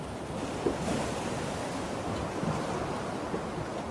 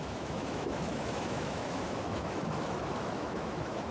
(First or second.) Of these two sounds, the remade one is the second